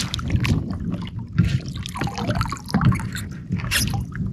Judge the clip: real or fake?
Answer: real